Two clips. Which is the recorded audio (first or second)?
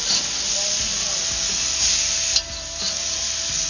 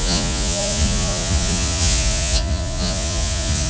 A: first